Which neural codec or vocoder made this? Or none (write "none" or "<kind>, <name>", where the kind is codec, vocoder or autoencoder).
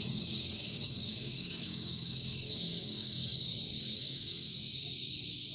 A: codec, DAC